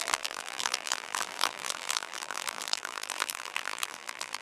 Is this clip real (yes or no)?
no